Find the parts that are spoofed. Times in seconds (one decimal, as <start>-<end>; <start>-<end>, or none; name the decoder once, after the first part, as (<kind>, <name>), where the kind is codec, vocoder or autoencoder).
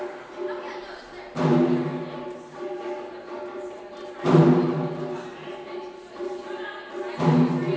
none